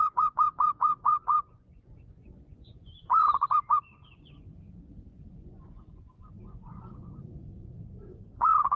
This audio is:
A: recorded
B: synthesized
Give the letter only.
B